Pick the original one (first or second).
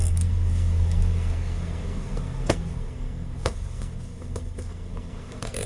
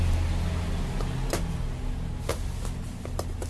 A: second